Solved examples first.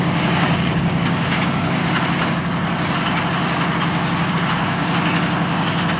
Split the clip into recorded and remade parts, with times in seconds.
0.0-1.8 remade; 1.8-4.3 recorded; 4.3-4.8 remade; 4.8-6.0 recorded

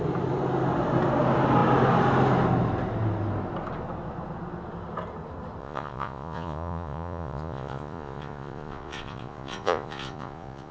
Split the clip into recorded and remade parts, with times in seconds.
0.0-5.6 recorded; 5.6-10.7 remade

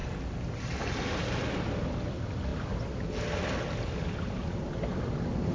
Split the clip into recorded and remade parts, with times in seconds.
0.0-5.5 recorded

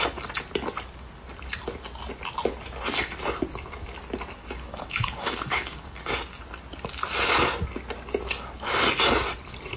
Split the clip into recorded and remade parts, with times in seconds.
0.0-4.4 recorded; 4.4-6.0 remade; 6.0-9.8 recorded

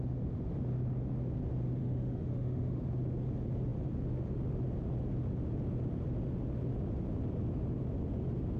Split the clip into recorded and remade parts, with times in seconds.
0.0-1.8 recorded; 1.8-2.8 remade; 2.8-8.6 recorded

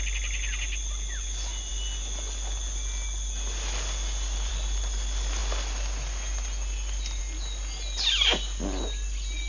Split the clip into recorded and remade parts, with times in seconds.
0.0-9.5 recorded